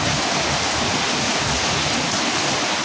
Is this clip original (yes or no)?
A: yes